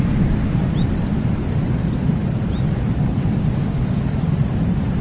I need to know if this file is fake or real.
real